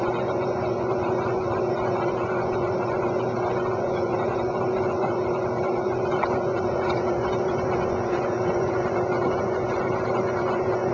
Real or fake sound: fake